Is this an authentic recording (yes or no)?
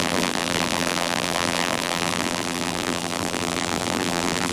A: no